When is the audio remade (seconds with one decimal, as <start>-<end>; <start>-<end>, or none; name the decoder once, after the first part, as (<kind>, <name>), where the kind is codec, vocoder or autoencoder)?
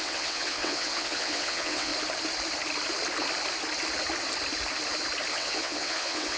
0.0-1.9 (vocoder, WaveNeXt); 5.3-6.4